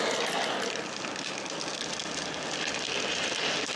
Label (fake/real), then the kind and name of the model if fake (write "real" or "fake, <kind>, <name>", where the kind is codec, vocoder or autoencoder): real